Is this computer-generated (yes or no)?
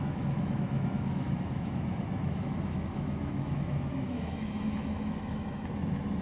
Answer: yes